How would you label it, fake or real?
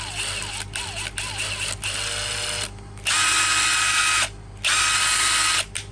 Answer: real